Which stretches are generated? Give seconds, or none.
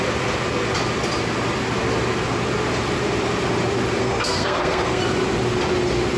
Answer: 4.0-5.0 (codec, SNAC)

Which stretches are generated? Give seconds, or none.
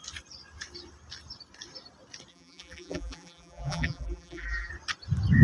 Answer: 2.3-4.7 (vocoder, BigVGAN v2)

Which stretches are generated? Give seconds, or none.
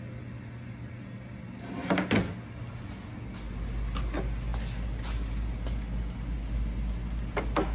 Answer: none